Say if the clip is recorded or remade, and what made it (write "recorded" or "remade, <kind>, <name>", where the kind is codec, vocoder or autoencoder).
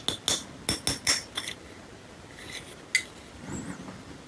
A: recorded